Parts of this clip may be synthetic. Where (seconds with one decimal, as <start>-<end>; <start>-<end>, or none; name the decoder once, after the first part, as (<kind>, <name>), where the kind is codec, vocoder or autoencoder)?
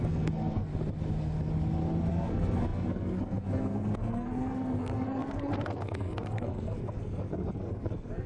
0.0-0.7 (codec, SNAC); 2.1-8.3